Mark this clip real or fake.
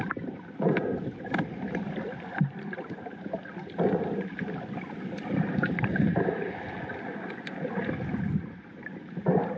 real